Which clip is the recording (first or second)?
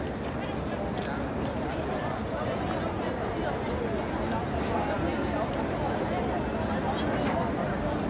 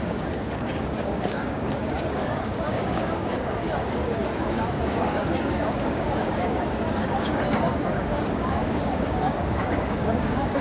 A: first